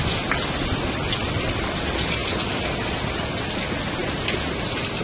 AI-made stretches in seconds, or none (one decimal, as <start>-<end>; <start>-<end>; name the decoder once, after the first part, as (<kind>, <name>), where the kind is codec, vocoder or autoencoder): none